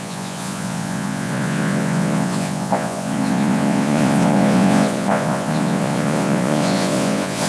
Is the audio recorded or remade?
remade